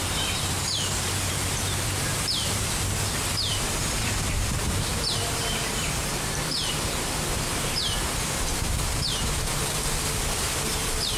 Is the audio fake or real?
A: fake